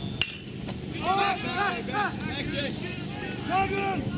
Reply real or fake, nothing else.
real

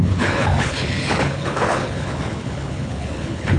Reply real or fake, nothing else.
fake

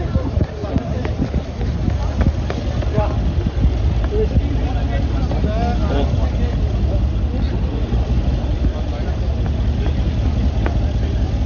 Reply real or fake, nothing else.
real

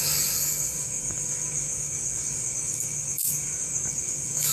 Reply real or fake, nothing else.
fake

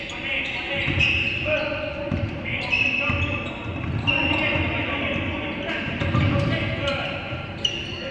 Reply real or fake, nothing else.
real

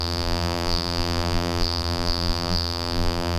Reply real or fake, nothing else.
fake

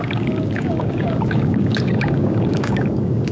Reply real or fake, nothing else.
fake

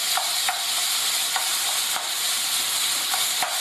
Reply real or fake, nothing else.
fake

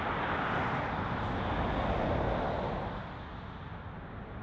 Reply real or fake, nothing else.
real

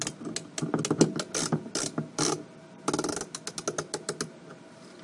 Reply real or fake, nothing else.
real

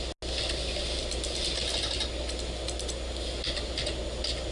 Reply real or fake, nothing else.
real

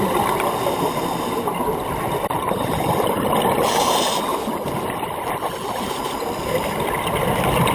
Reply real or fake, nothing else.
real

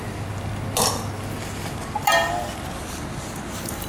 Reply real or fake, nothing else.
real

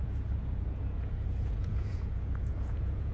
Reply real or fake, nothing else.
fake